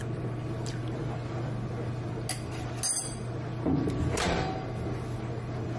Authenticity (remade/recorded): recorded